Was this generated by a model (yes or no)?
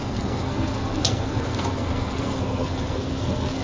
yes